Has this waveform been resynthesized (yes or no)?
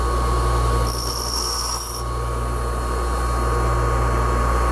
no